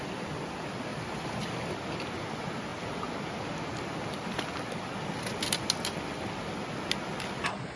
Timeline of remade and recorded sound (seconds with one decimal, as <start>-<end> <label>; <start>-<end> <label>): 0.0-0.9 recorded; 0.9-1.5 remade; 1.5-7.8 recorded